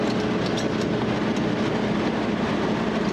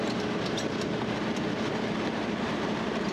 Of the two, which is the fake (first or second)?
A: second